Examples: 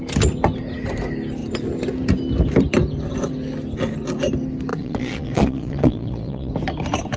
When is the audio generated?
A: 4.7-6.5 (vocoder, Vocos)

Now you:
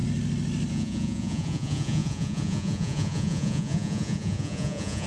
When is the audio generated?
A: 0.7-5.1 (vocoder, Vocos)

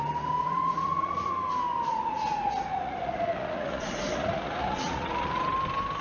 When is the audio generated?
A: 0.4-1.3 (vocoder, Vocos); 1.9-5.5

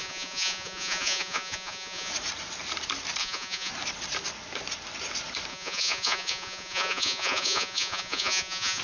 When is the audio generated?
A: 0.0-2.1 (vocoder, Vocos); 3.2-3.7; 5.5-8.8